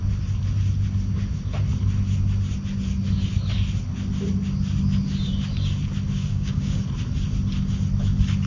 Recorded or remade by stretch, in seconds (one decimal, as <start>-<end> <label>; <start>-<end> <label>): 0.0-6.2 recorded; 6.2-6.8 remade; 6.8-8.5 recorded

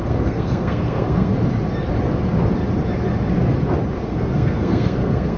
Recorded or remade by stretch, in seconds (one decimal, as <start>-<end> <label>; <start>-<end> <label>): 0.0-1.3 remade; 1.3-4.0 recorded; 4.0-5.4 remade

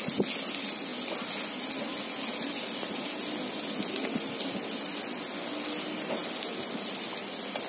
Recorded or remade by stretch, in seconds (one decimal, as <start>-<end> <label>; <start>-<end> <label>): 0.0-7.7 recorded

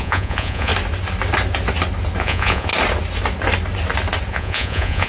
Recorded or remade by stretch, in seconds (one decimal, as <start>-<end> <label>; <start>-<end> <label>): 0.0-0.7 remade; 0.7-2.2 recorded; 2.2-2.7 remade; 2.7-4.3 recorded; 4.3-5.1 remade

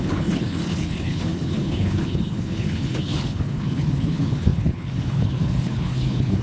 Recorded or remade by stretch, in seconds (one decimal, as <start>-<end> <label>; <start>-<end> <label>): 0.0-6.4 remade

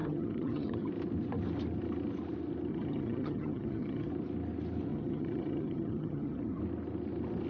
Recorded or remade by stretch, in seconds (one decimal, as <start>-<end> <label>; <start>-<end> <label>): 0.0-0.9 remade; 0.9-2.7 recorded; 2.7-4.1 remade; 4.1-4.9 recorded; 4.9-6.6 remade; 6.6-7.5 recorded